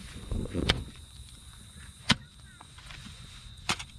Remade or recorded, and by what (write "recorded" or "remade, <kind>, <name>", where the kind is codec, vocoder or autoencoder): remade, vocoder, Vocos